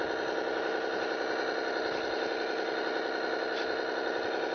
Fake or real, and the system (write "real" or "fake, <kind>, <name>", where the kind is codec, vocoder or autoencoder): real